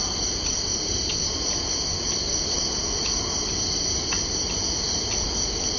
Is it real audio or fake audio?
real